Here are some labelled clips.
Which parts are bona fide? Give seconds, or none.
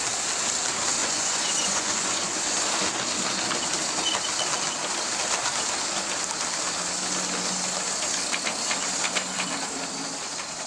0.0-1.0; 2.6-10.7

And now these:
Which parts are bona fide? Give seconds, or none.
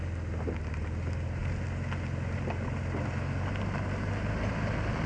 0.0-5.1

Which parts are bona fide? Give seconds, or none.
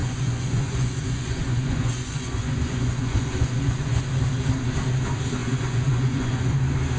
4.0-5.4; 6.6-7.0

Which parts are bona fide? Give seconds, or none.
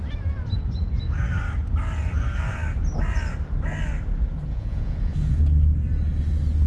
0.0-4.5; 5.4-6.7